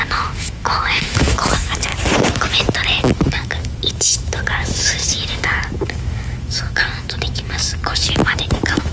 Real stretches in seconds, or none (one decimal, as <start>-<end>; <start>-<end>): 1.9-3.0